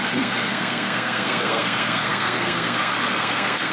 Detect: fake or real fake